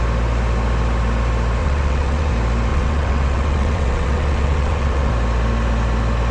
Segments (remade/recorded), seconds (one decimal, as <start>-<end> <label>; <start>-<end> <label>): 0.0-1.6 recorded; 1.6-2.3 remade; 2.3-2.7 recorded; 2.7-5.1 remade; 5.1-6.3 recorded